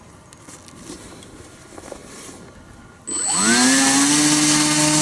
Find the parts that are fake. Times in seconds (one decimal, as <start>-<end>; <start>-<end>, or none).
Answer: none